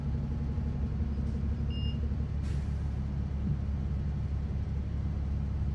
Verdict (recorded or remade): recorded